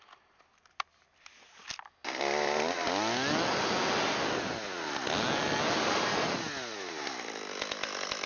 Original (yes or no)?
yes